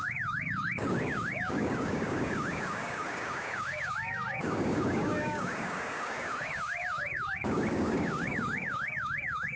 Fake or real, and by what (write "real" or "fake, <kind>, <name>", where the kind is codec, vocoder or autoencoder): fake, codec, DAC